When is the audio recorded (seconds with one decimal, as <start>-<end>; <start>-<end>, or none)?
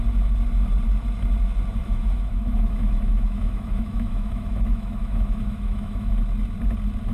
0.0-1.8; 6.1-7.1